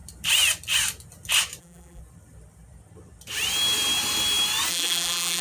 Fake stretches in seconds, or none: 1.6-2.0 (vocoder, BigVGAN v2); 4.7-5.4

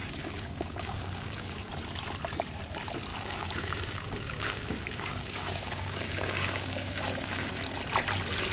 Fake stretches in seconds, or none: 0.0-1.7 (codec, DAC); 3.1-7.5

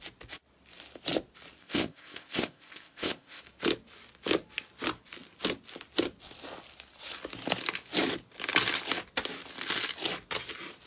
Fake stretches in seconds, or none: 1.6-3.4 (codec, ZipCodec)

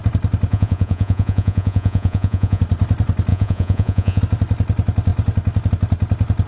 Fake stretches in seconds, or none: 0.5-2.6 (vocoder, Vocos); 3.3-4.2

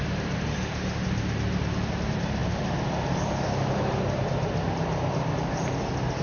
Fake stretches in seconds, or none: none